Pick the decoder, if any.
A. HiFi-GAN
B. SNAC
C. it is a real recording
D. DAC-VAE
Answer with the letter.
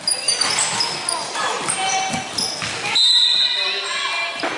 C